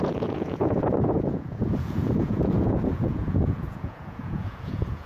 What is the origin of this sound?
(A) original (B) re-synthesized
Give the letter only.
B